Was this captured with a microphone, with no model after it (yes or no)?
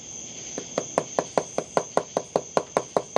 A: yes